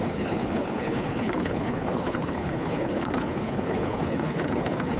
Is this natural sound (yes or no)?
no